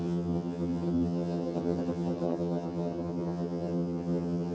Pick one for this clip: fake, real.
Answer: fake